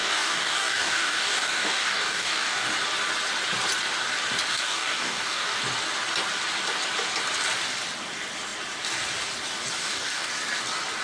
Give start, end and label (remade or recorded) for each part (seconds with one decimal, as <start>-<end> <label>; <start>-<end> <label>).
0.0-2.7 remade; 2.7-4.5 recorded; 4.5-5.6 remade; 5.6-9.8 recorded; 9.8-10.3 remade; 10.3-11.0 recorded